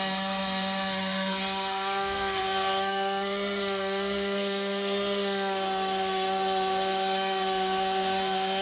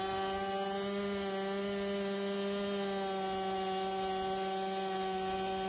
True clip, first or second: second